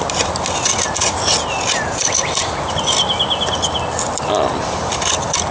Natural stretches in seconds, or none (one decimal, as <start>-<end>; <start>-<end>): 0.0-5.5